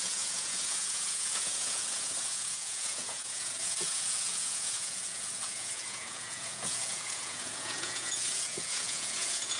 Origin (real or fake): fake